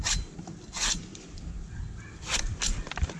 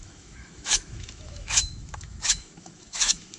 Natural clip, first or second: first